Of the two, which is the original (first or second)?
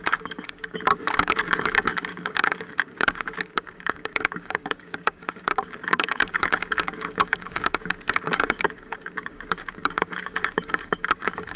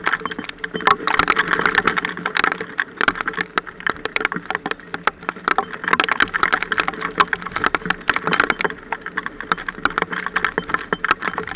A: second